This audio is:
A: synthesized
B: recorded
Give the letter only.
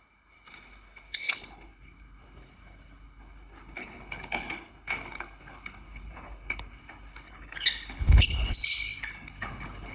A